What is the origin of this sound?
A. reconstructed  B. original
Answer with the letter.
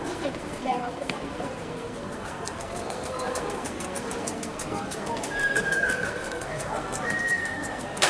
A